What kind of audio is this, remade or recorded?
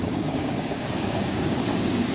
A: remade